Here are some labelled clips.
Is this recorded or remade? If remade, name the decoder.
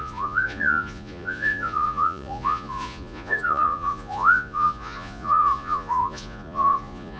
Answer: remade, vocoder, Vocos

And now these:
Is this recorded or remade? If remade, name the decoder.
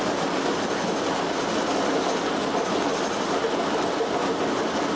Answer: recorded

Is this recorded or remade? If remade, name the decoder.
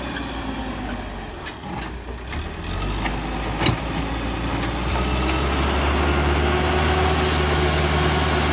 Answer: recorded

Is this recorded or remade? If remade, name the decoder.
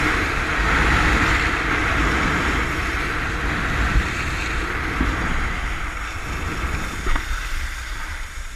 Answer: recorded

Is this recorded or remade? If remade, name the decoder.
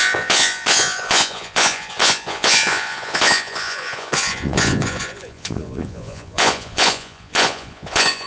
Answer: remade, vocoder, Vocos